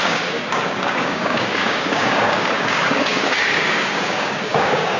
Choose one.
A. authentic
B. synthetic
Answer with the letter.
B